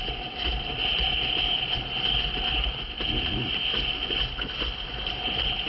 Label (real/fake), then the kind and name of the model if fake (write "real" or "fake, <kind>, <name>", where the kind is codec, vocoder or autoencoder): real